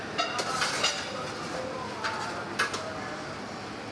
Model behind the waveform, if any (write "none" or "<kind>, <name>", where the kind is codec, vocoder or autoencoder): none